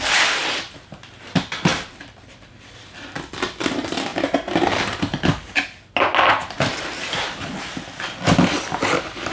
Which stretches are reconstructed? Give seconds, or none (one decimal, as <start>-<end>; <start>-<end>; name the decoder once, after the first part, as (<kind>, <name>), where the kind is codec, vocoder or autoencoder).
none